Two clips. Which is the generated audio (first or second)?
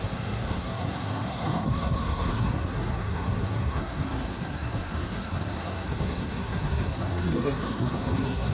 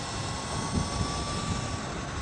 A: first